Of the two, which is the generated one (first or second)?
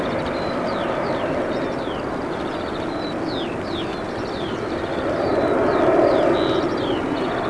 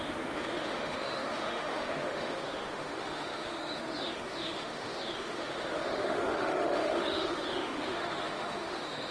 second